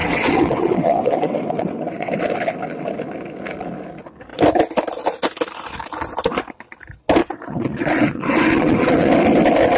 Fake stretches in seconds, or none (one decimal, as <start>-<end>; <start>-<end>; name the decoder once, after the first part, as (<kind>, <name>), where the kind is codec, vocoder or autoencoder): 0.0-2.1 (vocoder, WaveNeXt); 7.2-9.1

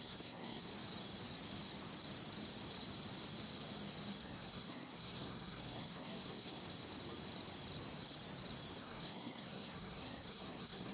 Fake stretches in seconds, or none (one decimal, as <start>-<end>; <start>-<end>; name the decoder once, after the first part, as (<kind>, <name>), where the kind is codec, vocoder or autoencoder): 0.0-0.7 (codec, SNAC); 4.2-6.6; 8.8-10.9